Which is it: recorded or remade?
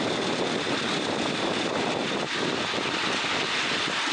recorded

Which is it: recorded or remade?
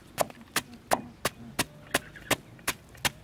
recorded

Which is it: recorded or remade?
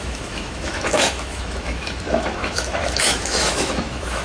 remade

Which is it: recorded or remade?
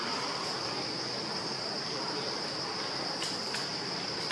remade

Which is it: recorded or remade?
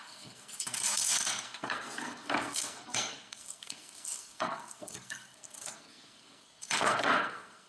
remade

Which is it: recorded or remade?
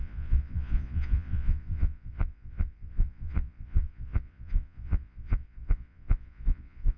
remade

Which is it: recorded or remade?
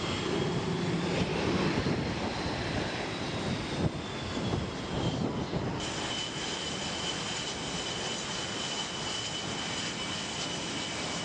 recorded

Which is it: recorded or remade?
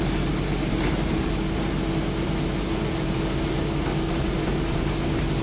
recorded